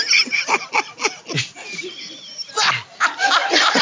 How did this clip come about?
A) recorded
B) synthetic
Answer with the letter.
A